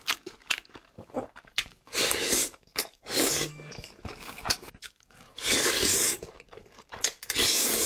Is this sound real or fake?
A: fake